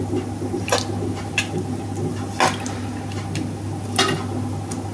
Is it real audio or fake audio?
real